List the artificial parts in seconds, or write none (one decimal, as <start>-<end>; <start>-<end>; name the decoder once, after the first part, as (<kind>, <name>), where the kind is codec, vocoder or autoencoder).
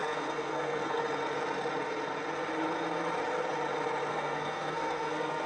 0.0-1.0 (codec, SNAC); 4.1-5.5